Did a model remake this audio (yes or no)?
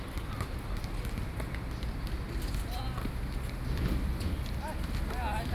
no